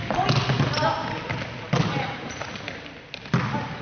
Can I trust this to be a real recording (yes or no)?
yes